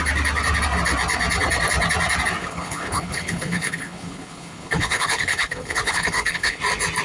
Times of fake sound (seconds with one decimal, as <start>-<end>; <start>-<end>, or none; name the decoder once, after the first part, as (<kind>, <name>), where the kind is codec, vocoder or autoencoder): 2.4-6.6 (codec, HILCodec)